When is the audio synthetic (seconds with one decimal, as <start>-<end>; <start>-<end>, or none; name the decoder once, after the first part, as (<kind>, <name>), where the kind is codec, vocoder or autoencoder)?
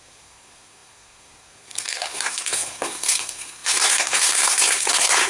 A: 0.0-5.3 (codec, SNAC)